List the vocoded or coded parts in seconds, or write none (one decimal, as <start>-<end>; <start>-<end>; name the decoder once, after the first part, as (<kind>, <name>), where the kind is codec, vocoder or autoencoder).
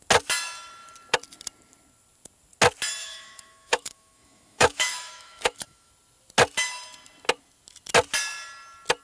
3.0-5.9 (autoencoder, DAC-VAE)